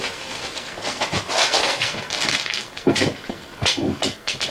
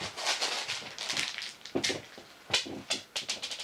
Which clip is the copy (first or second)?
first